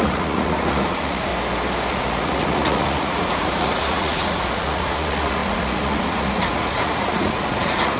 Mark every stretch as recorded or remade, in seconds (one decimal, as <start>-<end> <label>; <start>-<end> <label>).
0.0-1.3 remade; 1.3-1.9 recorded; 1.9-8.0 remade